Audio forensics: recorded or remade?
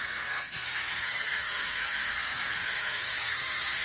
remade